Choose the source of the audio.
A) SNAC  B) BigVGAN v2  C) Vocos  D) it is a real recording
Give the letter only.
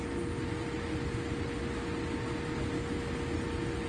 D